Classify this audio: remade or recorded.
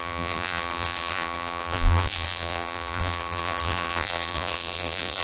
remade